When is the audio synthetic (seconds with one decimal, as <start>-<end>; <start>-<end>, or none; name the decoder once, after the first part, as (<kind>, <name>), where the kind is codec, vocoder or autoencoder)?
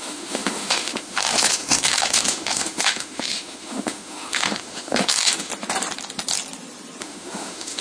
0.0-5.5 (autoencoder, DAC-VAE); 7.0-7.8